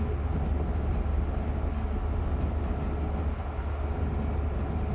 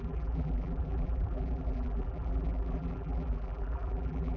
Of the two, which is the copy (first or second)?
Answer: second